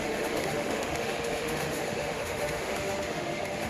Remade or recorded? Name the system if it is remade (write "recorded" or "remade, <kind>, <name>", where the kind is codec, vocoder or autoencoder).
remade, autoencoder, DAC-VAE